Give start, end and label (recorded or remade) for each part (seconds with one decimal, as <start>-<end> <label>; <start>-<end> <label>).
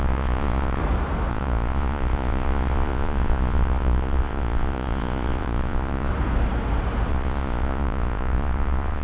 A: 0.0-0.8 remade; 0.8-1.3 recorded; 1.3-6.1 remade; 6.1-7.1 recorded; 7.1-9.0 remade